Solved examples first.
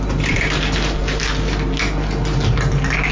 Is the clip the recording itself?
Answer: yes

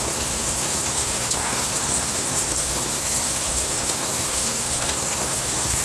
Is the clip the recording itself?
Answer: no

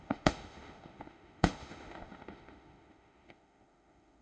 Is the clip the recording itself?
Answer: no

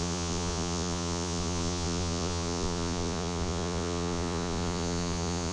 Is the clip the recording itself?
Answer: no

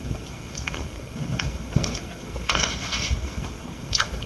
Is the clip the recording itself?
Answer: no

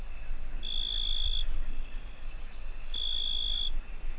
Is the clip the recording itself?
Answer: yes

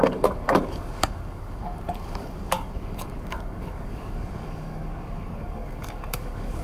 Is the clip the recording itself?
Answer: no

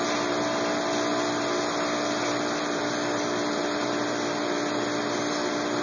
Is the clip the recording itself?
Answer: yes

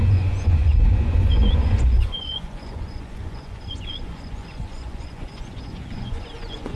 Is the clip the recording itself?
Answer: no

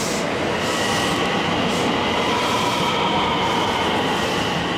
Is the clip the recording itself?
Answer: yes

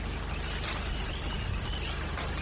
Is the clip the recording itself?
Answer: yes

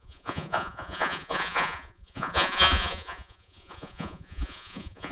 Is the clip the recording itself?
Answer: no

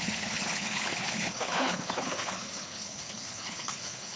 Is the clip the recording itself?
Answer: no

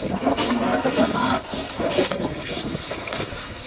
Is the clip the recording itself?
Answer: no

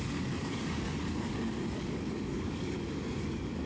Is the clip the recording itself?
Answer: no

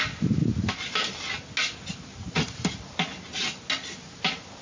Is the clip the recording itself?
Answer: yes